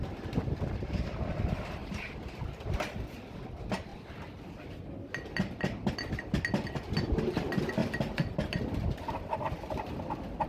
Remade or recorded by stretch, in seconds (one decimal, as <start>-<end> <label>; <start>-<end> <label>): 0.0-1.8 recorded; 1.8-2.4 remade; 2.4-3.9 recorded; 3.9-4.5 remade; 4.5-10.5 recorded